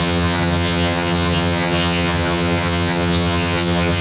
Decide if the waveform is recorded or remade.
remade